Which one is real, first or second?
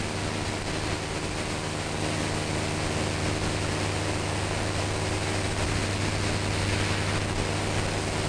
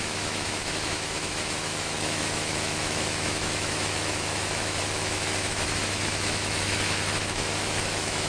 first